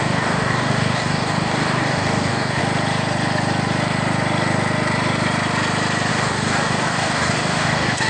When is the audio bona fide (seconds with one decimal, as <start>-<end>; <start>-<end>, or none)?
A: 2.6-6.1